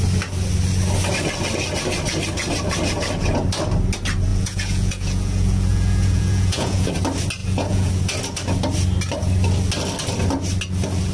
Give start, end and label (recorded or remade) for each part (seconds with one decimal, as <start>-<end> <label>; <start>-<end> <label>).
0.0-4.3 recorded; 4.3-6.9 remade; 6.9-7.4 recorded; 7.4-7.9 remade; 7.9-11.1 recorded